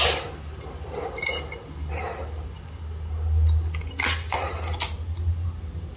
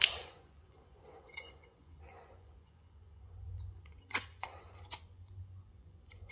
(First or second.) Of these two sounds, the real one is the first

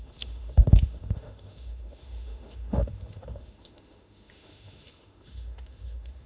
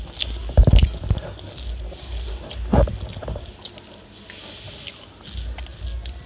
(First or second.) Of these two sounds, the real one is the second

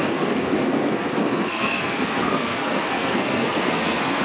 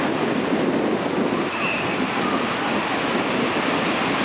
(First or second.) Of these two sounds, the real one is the second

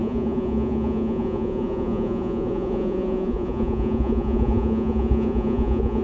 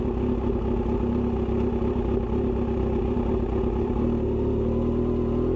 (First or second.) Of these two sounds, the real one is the second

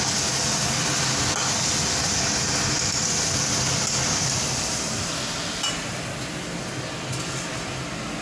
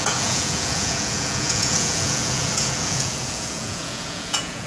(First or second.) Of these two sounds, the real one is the first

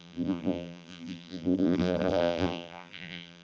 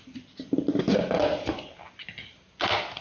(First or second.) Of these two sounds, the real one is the second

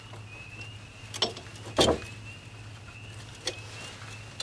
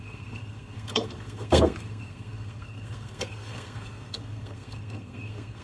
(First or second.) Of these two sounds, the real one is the first